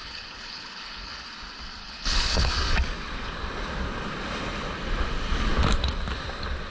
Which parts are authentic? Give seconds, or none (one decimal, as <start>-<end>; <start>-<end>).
1.3-1.8; 2.5-6.7